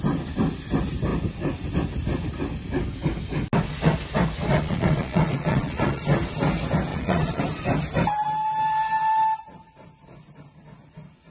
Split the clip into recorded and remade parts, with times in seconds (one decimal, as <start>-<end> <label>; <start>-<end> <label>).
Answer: 0.0-4.5 recorded; 4.5-6.0 remade; 6.0-6.9 recorded; 6.9-7.4 remade; 7.4-11.3 recorded